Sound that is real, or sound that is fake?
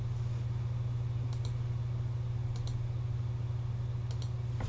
real